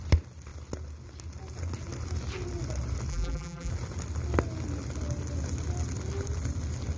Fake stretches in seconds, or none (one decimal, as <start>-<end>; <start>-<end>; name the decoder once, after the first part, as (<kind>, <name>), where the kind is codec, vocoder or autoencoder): 3.1-3.7 (vocoder, BigVGAN v2)